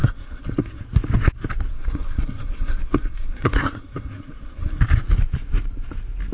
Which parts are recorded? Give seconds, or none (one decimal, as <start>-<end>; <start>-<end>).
0.8-1.7; 4.8-6.3